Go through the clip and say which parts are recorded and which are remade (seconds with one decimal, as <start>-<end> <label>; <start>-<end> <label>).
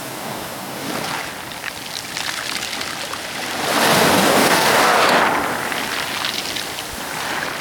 0.0-0.9 remade; 0.9-4.2 recorded; 4.2-5.2 remade; 5.2-7.6 recorded